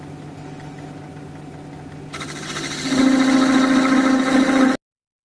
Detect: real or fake real